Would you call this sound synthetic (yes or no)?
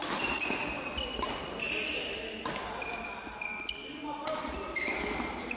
no